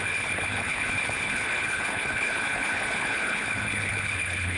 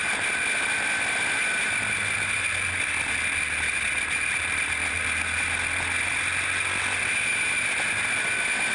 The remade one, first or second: first